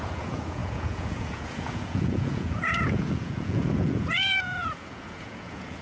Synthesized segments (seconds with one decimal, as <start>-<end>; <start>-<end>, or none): 0.0-5.8